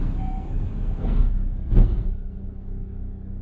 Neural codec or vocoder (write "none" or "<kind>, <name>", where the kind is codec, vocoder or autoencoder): codec, SNAC